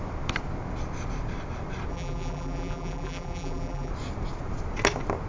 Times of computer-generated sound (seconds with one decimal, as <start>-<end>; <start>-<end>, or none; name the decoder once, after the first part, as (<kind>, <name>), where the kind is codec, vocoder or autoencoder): 1.9-3.9 (vocoder, BigVGAN v2)

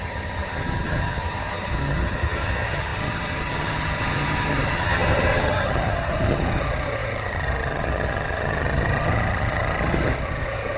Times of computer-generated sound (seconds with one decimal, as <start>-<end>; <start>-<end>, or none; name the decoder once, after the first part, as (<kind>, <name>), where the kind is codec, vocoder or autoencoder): 0.0-10.8 (vocoder, HiFi-GAN)

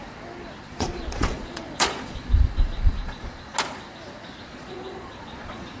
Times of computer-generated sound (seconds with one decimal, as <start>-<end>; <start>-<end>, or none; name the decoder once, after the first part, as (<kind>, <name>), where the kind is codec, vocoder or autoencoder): 0.6-3.5 (vocoder, Vocos); 4.4-5.8

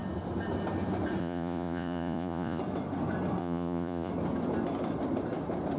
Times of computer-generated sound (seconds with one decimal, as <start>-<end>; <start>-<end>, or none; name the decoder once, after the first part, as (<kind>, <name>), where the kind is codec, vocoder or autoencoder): 1.2-2.6 (vocoder, Vocos); 3.4-4.1

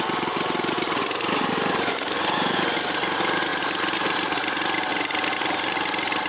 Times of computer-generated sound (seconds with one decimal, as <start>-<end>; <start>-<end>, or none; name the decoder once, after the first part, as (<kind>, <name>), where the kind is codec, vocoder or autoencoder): none

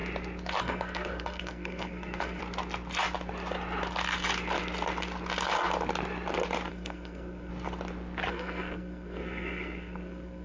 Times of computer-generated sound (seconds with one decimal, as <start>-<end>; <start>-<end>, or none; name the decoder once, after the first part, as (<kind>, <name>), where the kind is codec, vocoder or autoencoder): 0.6-2.4 (codec, SNAC); 6.7-7.5; 8.3-10.4

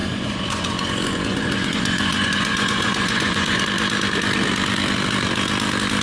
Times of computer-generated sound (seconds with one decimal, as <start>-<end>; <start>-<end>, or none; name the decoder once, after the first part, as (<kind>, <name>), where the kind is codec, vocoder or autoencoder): 0.0-3.6 (vocoder, Vocos)